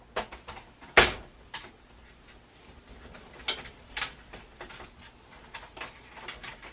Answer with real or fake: real